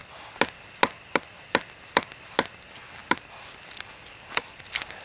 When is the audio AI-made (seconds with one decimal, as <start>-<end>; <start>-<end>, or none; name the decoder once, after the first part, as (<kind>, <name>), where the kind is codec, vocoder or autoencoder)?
3.0-4.4 (vocoder, BigVGAN v2)